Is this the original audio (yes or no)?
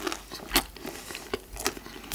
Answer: yes